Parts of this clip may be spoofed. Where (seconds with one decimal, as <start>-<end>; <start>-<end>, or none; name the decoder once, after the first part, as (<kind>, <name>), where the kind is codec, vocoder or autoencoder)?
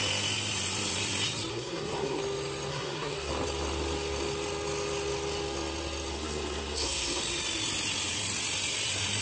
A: 1.5-2.2 (codec, SNAC); 2.7-3.3; 6.1-7.2